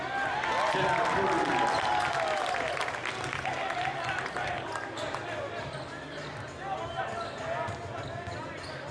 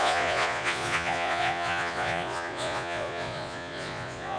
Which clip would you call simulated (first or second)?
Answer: second